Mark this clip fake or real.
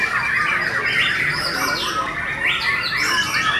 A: real